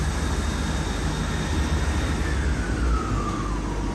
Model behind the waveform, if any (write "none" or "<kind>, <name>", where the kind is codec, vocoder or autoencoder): none